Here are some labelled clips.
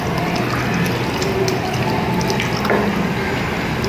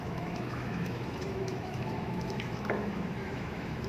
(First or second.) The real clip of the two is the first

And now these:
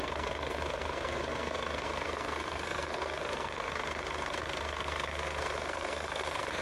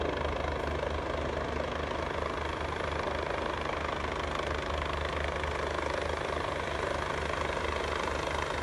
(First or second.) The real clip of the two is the second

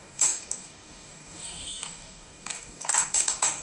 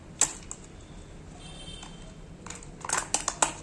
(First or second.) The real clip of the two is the second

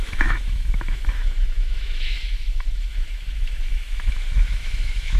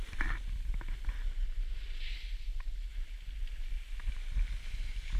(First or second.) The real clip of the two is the second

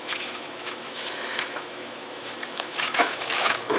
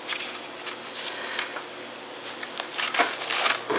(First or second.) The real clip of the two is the second